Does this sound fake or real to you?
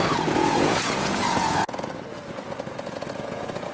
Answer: fake